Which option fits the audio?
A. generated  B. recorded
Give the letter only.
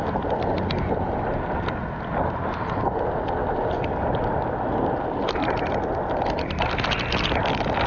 B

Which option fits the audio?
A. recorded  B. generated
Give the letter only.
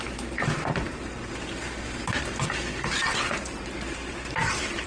A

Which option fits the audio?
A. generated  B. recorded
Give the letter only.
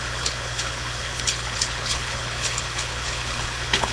A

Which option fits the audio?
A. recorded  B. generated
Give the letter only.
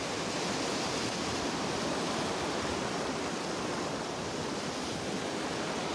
A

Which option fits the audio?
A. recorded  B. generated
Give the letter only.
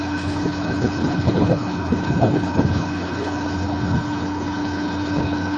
B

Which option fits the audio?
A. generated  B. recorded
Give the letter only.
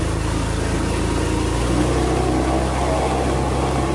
B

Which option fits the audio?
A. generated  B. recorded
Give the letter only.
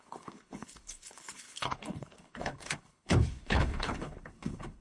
A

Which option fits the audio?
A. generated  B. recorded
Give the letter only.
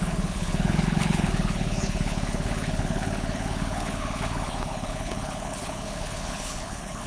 A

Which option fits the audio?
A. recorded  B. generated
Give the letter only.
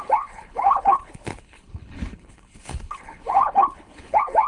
B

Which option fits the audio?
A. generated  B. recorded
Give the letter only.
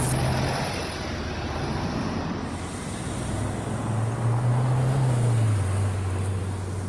B